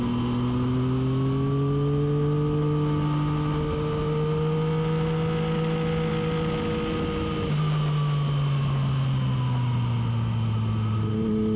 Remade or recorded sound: recorded